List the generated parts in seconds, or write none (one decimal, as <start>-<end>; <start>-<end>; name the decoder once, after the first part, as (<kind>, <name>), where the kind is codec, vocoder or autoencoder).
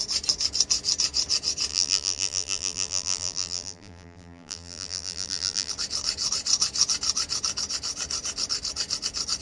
1.7-5.7 (vocoder, BigVGAN v2)